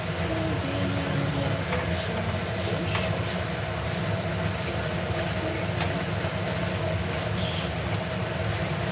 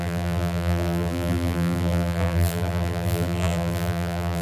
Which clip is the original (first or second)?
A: first